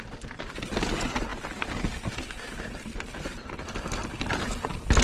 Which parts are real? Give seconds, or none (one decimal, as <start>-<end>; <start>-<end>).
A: 0.0-5.0